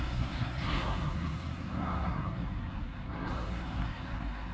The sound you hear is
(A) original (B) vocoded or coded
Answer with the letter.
B